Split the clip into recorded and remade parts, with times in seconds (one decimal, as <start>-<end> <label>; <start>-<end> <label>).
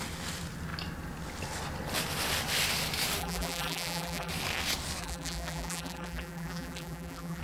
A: 0.0-3.2 recorded; 3.2-4.3 remade; 4.3-5.0 recorded; 5.0-7.4 remade